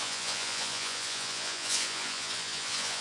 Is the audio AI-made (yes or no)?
yes